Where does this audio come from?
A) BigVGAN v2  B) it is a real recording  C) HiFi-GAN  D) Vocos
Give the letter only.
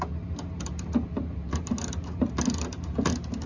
B